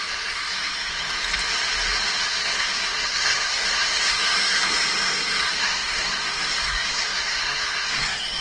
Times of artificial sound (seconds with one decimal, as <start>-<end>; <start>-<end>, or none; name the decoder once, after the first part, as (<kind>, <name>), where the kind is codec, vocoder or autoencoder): 0.0-0.9 (codec, SNAC); 2.2-8.4